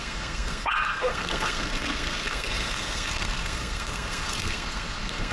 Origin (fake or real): fake